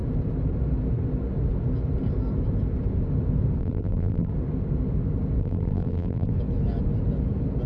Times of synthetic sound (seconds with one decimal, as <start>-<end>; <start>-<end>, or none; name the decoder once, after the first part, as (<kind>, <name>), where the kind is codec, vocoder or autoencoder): 3.6-4.3 (vocoder, BigVGAN v2); 5.4-6.3